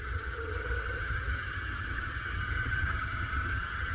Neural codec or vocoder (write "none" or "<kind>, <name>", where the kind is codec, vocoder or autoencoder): vocoder, HiFi-GAN